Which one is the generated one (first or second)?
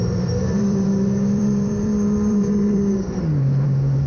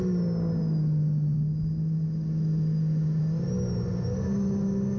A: first